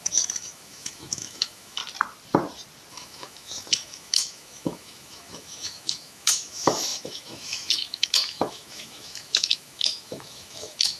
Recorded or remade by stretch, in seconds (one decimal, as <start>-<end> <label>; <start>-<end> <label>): 0.0-1.8 remade; 1.8-2.9 recorded; 2.9-11.0 remade